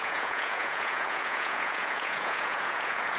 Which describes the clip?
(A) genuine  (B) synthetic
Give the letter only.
B